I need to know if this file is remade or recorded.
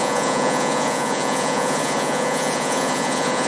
remade